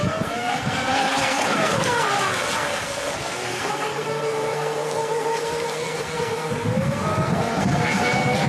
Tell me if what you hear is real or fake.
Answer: fake